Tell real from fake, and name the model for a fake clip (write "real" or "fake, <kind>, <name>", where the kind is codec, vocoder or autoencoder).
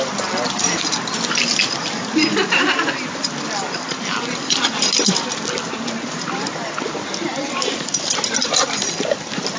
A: real